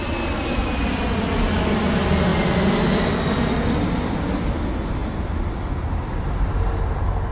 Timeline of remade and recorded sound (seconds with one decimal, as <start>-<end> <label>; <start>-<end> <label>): 0.0-7.3 recorded